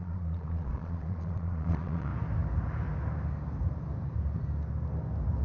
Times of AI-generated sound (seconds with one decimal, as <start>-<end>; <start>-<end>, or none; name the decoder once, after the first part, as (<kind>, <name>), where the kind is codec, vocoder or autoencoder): 0.0-2.1 (vocoder, Vocos)